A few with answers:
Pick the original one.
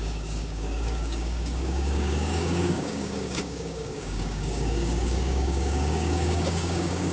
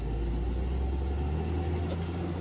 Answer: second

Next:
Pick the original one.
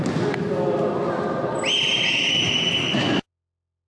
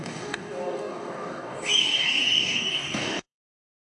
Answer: first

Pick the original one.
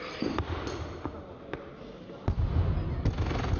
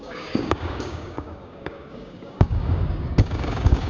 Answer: first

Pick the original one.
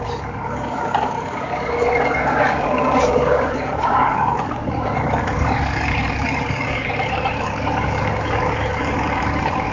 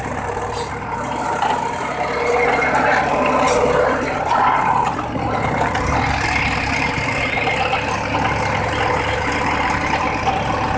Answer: second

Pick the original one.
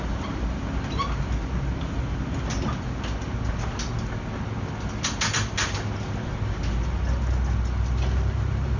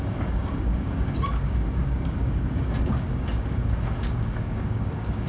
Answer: first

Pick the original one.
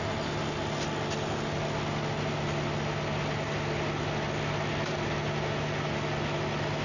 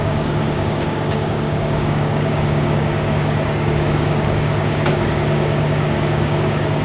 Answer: first